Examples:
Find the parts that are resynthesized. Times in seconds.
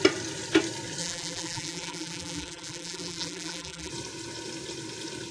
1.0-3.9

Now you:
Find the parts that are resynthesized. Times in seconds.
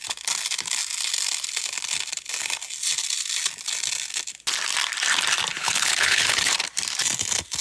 5.5-6.5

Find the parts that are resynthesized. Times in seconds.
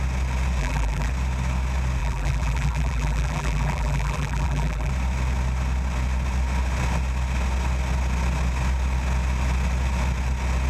0.6-1.1; 2.0-4.9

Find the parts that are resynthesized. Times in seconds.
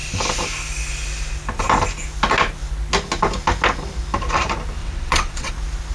4.8-5.5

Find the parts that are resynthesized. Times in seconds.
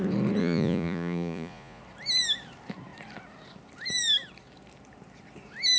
0.4-1.8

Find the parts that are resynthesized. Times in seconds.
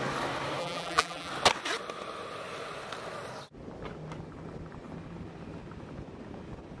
0.6-1.3